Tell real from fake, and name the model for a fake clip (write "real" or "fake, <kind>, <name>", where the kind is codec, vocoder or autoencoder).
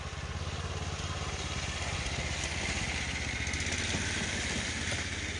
real